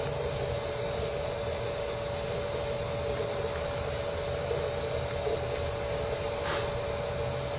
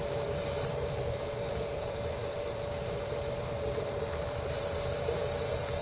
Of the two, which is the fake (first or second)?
second